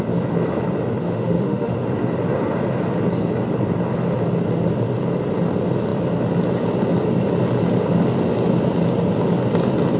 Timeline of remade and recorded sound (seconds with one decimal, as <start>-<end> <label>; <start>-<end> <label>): 0.0-1.0 recorded; 1.0-1.7 remade; 1.7-10.0 recorded